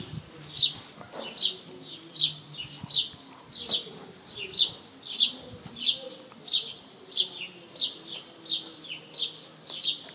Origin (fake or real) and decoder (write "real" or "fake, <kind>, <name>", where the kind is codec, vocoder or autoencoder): real